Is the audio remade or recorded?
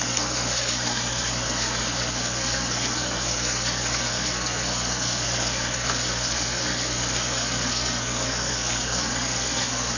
remade